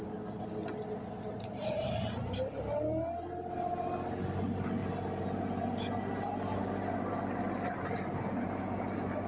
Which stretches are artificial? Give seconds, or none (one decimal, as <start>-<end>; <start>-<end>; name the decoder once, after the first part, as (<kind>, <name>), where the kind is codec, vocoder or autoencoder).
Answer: none